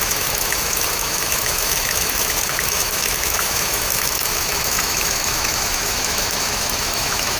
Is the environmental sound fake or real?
fake